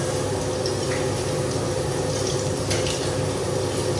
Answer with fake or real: real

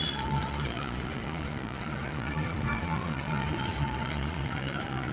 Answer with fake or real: fake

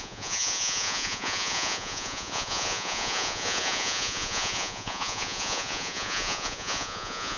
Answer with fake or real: fake